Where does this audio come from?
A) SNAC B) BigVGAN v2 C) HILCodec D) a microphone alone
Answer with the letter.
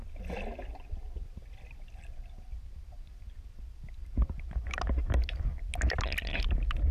D